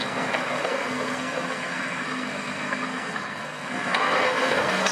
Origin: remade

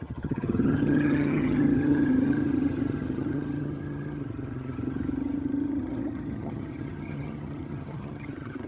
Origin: remade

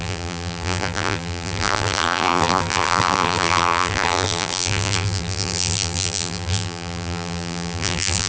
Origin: remade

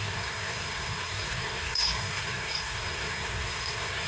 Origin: remade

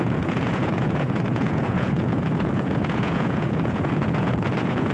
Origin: remade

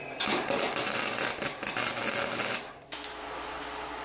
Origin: recorded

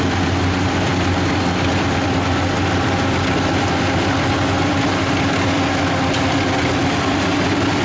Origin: recorded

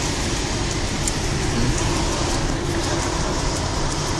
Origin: recorded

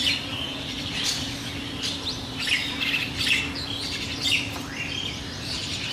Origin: recorded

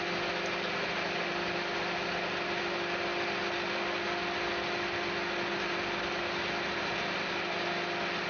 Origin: recorded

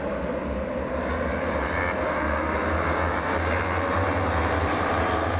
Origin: recorded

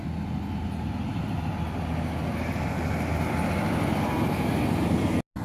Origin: recorded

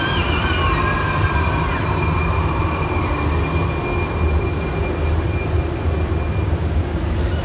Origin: recorded